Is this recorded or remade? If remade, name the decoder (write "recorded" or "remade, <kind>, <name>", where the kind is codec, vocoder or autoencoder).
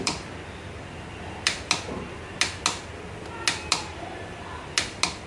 recorded